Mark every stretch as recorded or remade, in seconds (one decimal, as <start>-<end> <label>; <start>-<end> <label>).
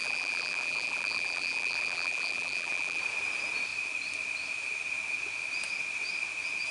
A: 0.0-3.0 remade; 3.0-6.7 recorded